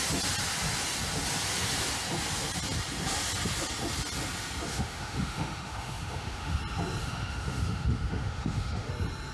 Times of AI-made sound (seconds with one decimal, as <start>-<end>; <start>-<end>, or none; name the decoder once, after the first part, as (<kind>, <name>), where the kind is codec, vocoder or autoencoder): 4.7-6.6 (autoencoder, DAC-VAE); 7.0-8.9